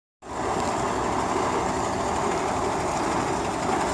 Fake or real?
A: real